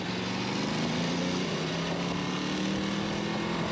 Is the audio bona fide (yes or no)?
yes